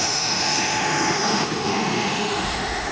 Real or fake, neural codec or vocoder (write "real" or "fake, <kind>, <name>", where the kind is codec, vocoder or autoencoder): fake, autoencoder, DAC-VAE